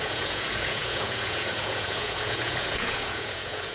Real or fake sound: fake